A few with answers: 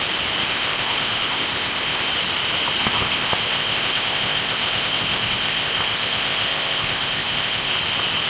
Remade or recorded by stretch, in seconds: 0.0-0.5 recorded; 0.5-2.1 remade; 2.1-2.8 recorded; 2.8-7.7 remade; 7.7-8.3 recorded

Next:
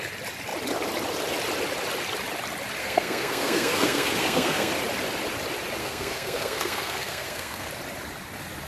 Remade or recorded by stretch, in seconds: 0.0-2.8 recorded; 2.8-4.7 remade; 4.7-5.8 recorded; 5.8-7.7 remade; 7.7-8.7 recorded

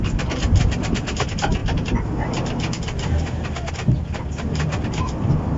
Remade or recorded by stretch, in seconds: 0.0-5.6 remade

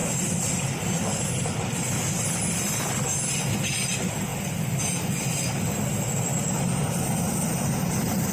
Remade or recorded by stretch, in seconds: 0.0-8.3 recorded

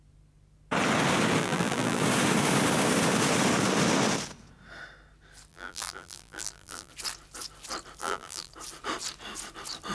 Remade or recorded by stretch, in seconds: 0.0-1.4 recorded; 1.4-2.0 remade; 2.0-5.5 recorded; 5.5-6.9 remade; 6.9-8.0 recorded; 8.0-8.5 remade; 8.5-9.9 recorded

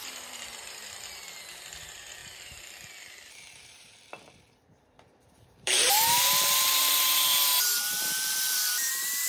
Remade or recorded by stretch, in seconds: 0.0-9.3 remade